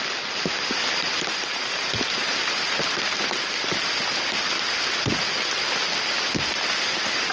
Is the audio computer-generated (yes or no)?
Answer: no